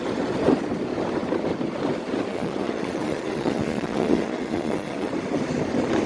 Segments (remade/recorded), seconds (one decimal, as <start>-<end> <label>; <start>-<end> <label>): 0.0-2.3 recorded; 2.3-5.1 remade; 5.1-6.1 recorded